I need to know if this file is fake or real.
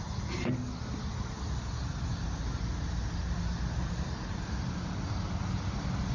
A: real